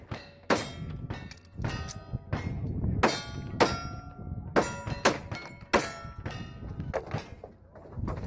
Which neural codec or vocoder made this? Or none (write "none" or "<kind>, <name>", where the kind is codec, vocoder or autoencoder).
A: none